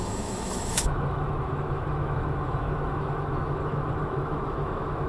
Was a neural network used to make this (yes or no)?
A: yes